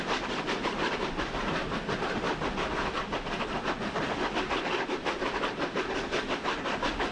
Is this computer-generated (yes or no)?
no